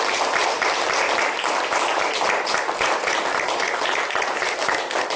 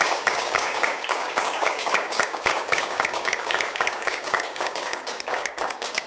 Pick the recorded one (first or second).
first